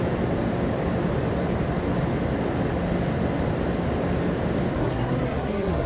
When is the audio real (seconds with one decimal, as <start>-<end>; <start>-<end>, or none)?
0.0-4.7